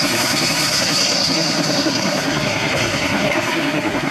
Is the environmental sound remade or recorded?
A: remade